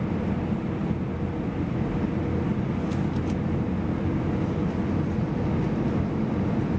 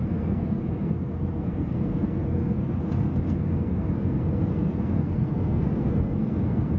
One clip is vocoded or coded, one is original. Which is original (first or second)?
first